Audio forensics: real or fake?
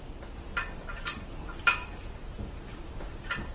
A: real